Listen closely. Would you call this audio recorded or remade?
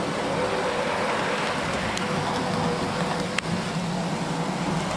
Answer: recorded